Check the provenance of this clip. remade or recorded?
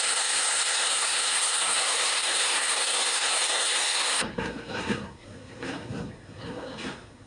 remade